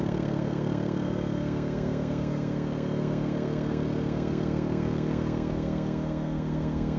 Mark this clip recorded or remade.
remade